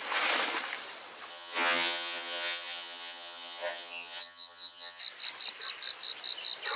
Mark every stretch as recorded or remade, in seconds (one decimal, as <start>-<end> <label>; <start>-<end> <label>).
0.0-1.3 recorded; 1.3-5.0 remade; 5.0-6.8 recorded